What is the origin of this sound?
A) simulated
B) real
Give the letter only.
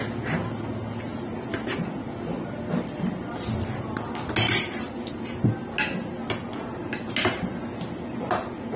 B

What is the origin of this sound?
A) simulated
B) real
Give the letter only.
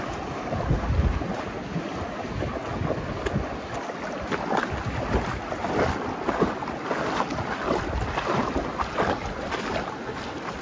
B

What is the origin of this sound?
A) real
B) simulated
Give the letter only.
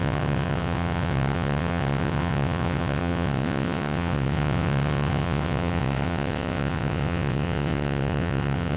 B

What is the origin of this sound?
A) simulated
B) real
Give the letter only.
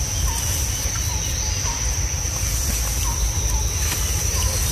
B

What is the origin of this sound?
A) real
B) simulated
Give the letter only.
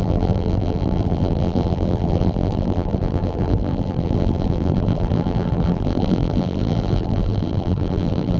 B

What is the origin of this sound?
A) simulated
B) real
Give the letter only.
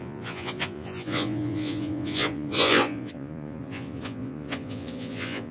A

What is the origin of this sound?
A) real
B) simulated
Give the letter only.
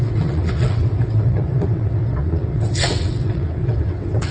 B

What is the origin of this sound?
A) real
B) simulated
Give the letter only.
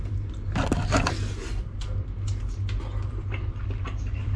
A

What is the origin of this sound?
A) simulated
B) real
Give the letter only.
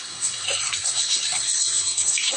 A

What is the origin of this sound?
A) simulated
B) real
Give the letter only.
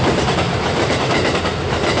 B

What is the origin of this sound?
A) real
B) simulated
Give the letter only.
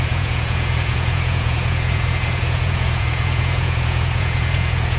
B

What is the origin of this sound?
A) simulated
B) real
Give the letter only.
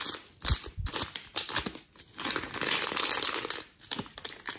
B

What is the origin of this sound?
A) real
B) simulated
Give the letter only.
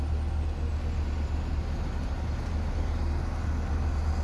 A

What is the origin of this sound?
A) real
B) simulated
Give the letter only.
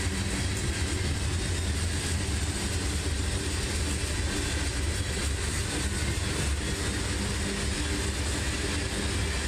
A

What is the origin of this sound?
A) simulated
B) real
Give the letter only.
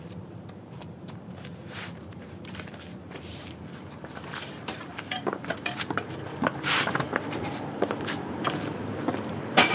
A